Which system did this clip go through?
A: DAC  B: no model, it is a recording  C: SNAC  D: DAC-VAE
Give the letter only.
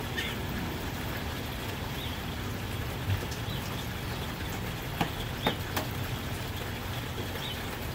B